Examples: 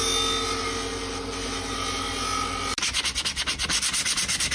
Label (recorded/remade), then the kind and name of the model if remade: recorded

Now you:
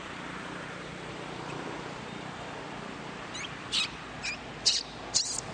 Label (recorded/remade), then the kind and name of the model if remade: recorded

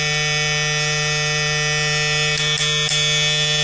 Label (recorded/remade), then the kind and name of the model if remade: recorded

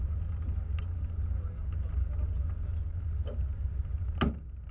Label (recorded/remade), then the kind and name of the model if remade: recorded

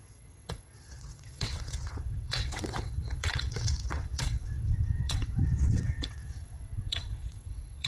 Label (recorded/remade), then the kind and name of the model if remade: remade, vocoder, WaveNeXt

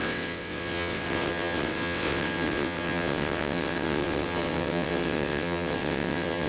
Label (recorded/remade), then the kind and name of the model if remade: remade, vocoder, WaveNeXt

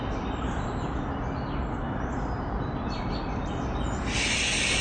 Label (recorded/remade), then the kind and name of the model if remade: recorded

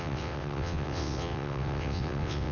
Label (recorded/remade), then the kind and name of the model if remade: remade, vocoder, WaveNeXt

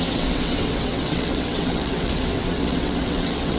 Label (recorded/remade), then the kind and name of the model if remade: remade, vocoder, WaveNeXt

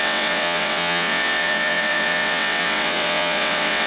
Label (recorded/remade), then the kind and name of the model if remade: remade, vocoder, WaveNeXt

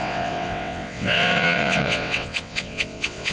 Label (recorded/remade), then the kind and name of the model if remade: remade, vocoder, WaveNeXt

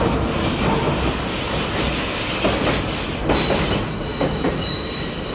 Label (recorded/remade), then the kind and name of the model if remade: recorded